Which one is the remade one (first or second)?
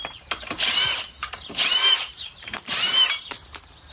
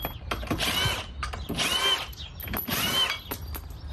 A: first